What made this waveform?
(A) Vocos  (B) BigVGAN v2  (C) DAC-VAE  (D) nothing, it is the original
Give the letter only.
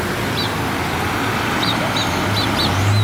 D